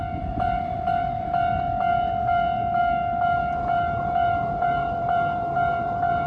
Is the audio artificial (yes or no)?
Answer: yes